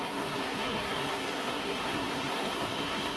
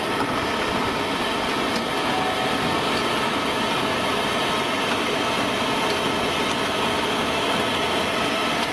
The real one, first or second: second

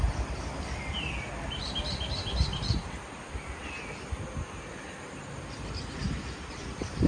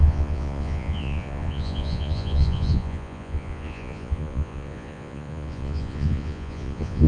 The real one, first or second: first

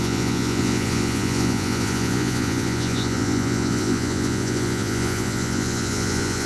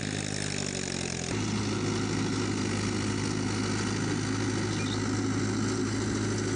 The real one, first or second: second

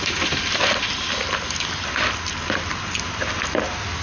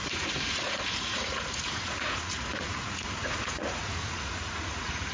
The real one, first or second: first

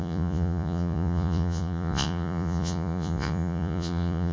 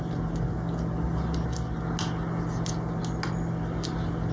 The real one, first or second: second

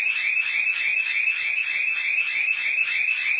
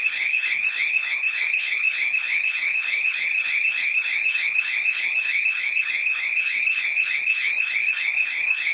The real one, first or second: first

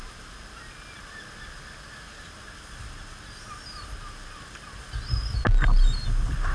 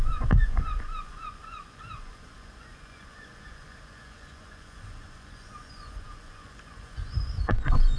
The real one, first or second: first